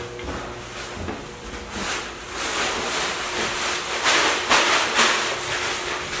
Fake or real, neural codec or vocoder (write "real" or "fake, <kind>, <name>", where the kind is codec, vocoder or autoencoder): real